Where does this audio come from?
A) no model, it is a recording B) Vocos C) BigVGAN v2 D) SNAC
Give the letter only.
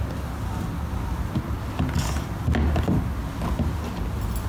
A